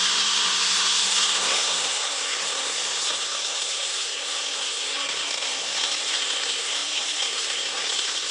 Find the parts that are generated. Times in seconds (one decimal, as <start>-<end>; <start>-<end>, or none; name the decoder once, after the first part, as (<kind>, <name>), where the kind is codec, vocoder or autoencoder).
0.0-8.3 (codec, SNAC)